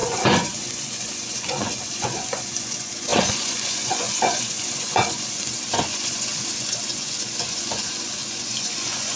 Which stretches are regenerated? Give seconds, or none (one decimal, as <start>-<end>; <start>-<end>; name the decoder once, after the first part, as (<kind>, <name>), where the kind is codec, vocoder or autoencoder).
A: 0.0-9.2 (vocoder, Vocos)